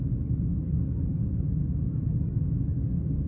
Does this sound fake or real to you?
real